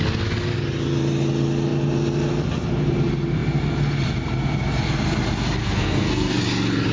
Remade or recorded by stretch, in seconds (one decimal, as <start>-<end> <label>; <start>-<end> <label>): 0.0-5.6 recorded; 5.6-6.4 remade; 6.4-6.9 recorded